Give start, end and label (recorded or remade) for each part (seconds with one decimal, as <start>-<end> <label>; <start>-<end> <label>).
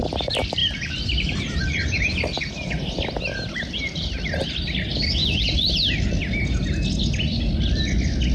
0.0-0.6 recorded; 0.6-2.5 remade; 2.5-3.5 recorded; 3.5-4.5 remade; 4.5-5.2 recorded; 5.2-6.1 remade; 6.1-8.3 recorded